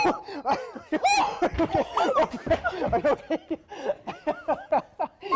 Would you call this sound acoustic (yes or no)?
yes